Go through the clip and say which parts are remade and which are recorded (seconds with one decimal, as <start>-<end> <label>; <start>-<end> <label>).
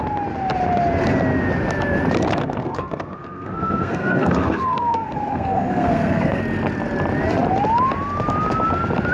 0.0-2.4 recorded; 2.4-6.4 remade; 6.4-9.1 recorded